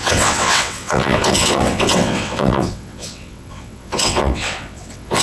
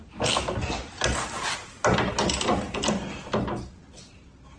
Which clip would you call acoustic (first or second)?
second